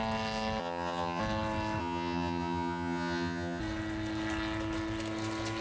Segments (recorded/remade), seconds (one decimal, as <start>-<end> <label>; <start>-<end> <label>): 0.0-0.6 recorded; 0.6-1.2 remade; 1.2-1.8 recorded; 1.8-3.6 remade; 3.6-5.6 recorded